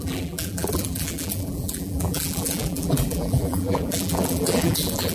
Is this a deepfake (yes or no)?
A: yes